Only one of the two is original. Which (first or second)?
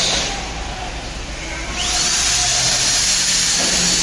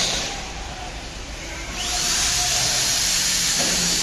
first